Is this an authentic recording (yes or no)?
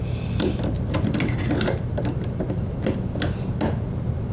yes